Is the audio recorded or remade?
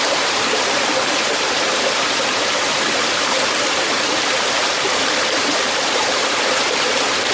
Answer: remade